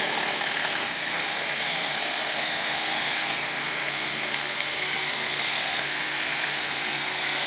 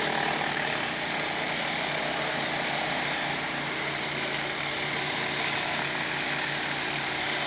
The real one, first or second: second